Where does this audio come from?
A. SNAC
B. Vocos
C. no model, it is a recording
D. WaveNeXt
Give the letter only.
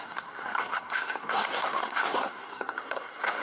A